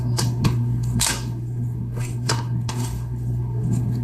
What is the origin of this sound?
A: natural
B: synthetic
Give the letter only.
B